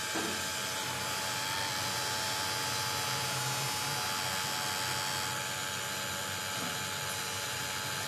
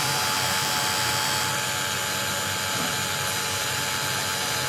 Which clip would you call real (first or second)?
first